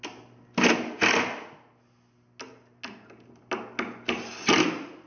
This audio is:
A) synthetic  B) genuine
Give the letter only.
B